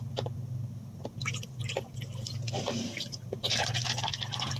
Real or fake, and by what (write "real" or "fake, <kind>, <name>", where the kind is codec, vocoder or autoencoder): real